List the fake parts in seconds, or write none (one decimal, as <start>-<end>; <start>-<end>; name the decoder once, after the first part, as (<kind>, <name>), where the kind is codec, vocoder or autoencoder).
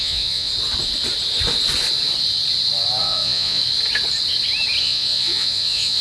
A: 0.0-0.5 (vocoder, Vocos); 3.0-3.6; 4.8-6.0